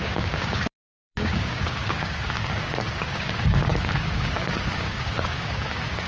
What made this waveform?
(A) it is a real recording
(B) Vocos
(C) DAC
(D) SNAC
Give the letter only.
C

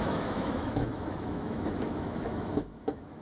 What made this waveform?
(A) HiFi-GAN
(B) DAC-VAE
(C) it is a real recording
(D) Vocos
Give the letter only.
B